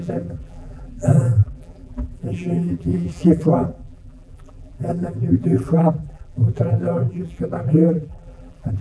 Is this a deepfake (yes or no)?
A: yes